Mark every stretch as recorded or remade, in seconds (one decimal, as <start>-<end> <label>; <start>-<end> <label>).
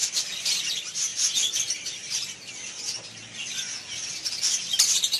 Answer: 0.0-1.1 remade; 1.1-1.6 recorded; 1.6-2.0 remade; 2.0-4.6 recorded; 4.6-5.2 remade